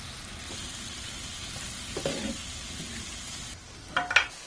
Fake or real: real